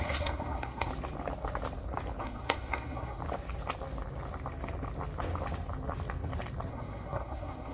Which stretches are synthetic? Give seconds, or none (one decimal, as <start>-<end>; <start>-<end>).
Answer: 0.0-0.9; 2.2-3.2; 6.7-7.7